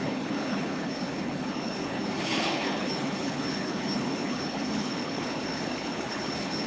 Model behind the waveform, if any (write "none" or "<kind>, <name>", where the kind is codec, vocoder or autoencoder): codec, HILCodec